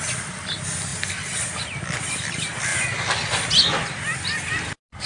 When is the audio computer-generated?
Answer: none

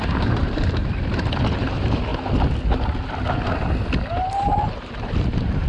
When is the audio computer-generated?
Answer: 0.0-0.8 (vocoder, BigVGAN v2); 1.5-2.1; 4.1-5.7

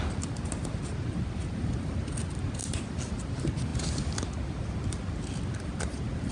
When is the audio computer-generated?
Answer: none

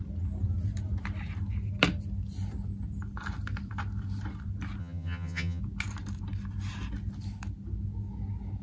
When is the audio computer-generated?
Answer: 4.8-5.6 (vocoder, HiFi-GAN)